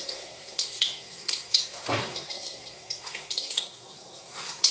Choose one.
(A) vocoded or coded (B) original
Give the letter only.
A